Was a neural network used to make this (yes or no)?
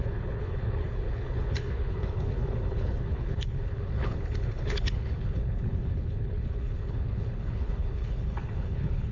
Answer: yes